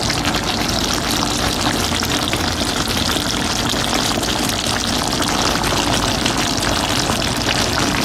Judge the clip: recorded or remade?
recorded